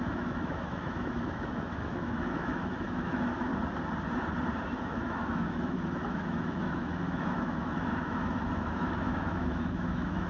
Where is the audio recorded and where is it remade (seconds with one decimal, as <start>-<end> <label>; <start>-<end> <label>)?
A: 0.0-3.5 remade; 3.5-4.8 recorded; 4.8-10.3 remade